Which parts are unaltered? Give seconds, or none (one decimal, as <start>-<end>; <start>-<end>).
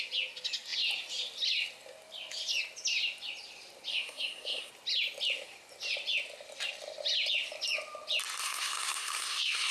0.0-3.9; 4.7-8.4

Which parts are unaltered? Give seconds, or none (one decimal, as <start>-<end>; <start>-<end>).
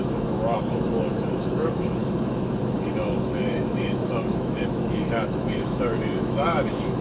none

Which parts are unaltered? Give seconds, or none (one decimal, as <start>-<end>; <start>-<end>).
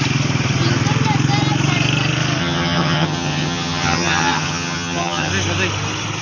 0.0-2.4; 5.3-6.2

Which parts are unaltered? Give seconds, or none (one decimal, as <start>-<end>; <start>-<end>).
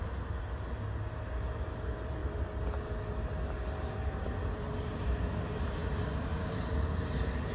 0.0-7.5